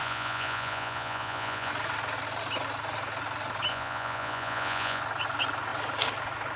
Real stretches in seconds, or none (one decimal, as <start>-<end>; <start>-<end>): 1.7-3.7; 5.0-6.6